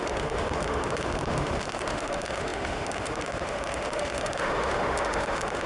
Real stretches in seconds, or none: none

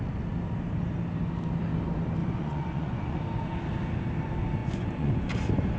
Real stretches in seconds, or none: 0.0-2.2; 3.2-4.6; 5.3-5.8

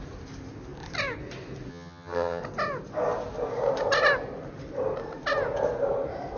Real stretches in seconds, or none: 0.0-1.7; 2.4-6.4

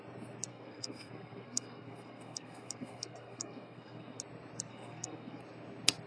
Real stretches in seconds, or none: 0.0-0.5; 4.2-4.7; 5.4-6.1